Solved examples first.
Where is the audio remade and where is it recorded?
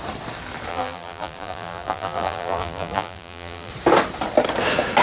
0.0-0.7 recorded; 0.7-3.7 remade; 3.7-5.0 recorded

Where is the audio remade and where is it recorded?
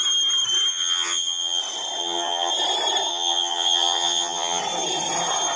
0.0-0.7 recorded; 0.7-1.6 remade; 1.6-2.0 recorded; 2.0-2.5 remade; 2.5-3.1 recorded; 3.1-4.6 remade; 4.6-5.6 recorded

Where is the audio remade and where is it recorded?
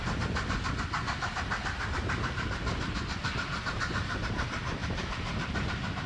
0.0-6.1 recorded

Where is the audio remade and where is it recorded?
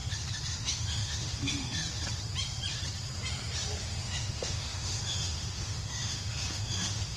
0.0-0.6 recorded; 0.6-1.8 remade; 1.8-3.8 recorded; 3.8-7.2 remade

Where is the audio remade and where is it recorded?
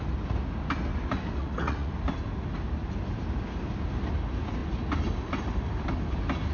0.0-1.4 recorded; 1.4-1.9 remade; 1.9-6.5 recorded